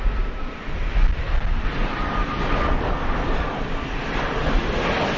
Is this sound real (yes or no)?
yes